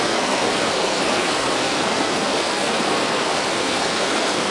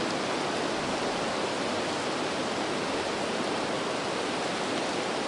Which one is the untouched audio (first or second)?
second